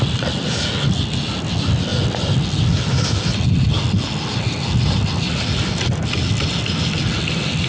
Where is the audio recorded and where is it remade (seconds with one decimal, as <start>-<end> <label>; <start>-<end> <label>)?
0.0-7.7 recorded